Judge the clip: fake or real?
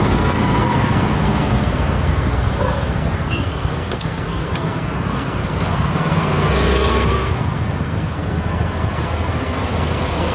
fake